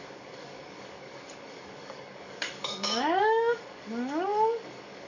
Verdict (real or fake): fake